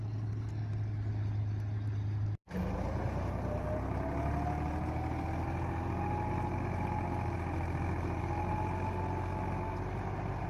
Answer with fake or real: real